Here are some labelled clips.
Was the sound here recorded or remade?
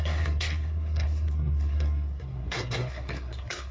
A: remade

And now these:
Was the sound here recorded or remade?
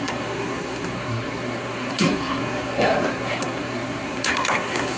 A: remade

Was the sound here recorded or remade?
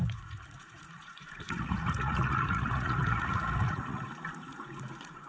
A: remade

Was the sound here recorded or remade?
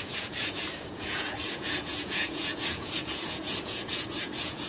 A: remade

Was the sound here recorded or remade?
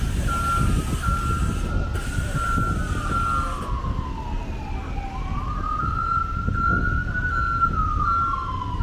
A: recorded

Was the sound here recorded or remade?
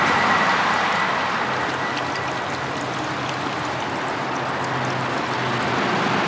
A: recorded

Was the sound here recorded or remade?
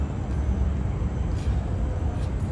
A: recorded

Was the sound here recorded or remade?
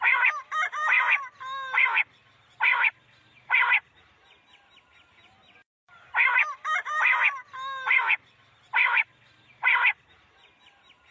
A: recorded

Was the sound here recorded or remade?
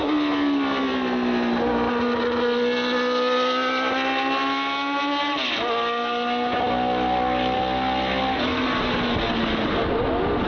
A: recorded